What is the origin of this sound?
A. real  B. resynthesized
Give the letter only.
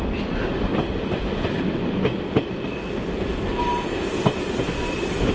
A